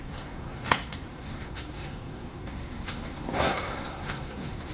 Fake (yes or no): yes